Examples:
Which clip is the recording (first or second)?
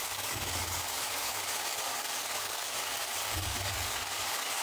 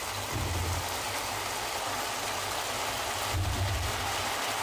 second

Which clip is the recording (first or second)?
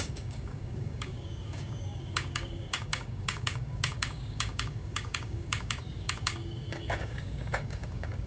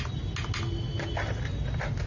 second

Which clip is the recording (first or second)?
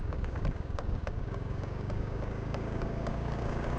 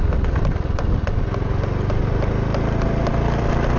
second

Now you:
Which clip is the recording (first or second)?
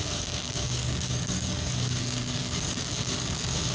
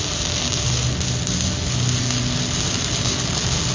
second